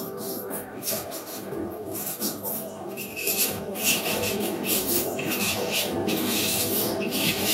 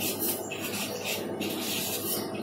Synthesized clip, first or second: first